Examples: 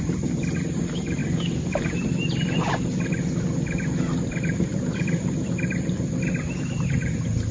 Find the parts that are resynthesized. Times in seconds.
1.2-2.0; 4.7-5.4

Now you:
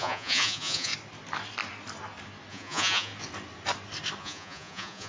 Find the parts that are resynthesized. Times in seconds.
0.0-0.9; 2.5-3.1; 4.2-5.1

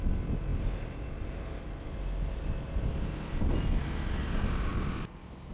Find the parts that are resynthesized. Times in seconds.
none

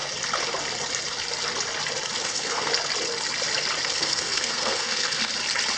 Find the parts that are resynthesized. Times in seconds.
2.2-2.7; 3.9-5.3

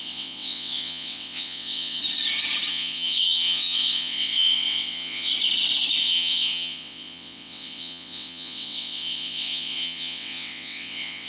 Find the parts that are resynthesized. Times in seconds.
0.0-2.0; 2.7-5.3; 6.0-11.3

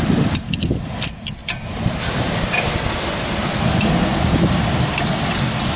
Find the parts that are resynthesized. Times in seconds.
none